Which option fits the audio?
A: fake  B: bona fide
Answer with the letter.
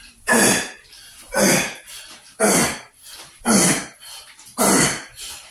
B